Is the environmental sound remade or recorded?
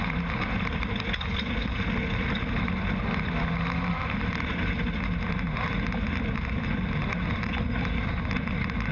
recorded